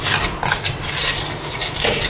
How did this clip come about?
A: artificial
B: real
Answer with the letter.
B